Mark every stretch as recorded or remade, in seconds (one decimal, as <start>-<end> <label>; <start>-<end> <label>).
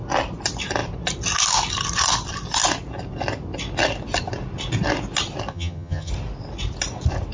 0.0-5.5 recorded; 5.5-6.1 remade; 6.1-7.3 recorded